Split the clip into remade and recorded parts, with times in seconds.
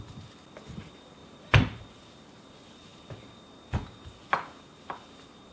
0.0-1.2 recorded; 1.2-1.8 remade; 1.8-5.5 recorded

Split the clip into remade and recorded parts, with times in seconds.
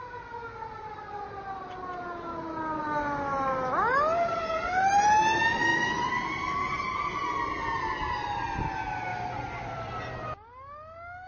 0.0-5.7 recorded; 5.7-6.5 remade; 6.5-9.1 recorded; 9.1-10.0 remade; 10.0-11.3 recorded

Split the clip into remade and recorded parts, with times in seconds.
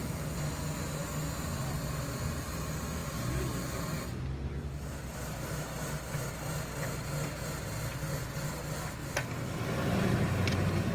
0.0-10.9 recorded